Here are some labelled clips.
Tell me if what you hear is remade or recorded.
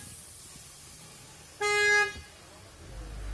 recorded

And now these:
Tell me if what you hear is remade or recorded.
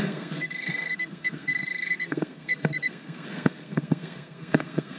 remade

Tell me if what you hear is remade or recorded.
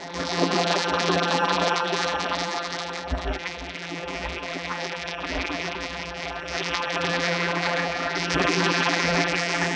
remade